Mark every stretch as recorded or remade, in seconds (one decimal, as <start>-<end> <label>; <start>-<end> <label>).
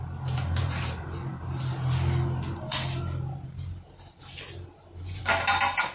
0.0-0.6 recorded; 0.6-1.7 remade; 1.7-4.7 recorded; 4.7-5.2 remade; 5.2-5.9 recorded